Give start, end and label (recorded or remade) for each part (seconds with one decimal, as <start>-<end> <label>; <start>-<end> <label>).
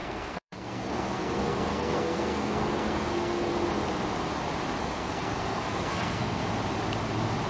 0.0-3.5 remade; 3.5-4.8 recorded; 4.8-6.4 remade; 6.4-7.5 recorded